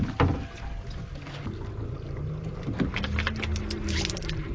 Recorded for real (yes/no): yes